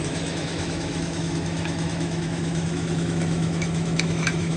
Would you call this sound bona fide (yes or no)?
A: no